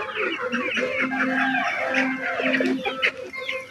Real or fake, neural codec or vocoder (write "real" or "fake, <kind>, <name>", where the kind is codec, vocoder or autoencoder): real